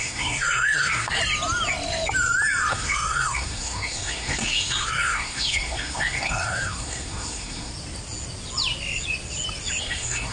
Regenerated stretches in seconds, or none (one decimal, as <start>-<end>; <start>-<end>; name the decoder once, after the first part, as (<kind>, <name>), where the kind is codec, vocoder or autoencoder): 0.0-1.2 (codec, SNAC); 2.7-7.7; 9.8-10.3